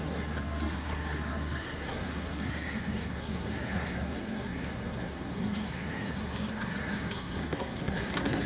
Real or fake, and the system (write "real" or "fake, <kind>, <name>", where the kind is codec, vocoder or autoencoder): fake, codec, SNAC